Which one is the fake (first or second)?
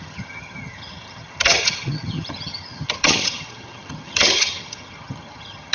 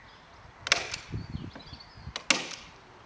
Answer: first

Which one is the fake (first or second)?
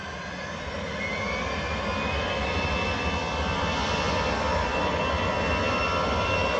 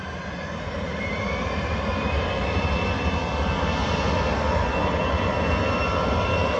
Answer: second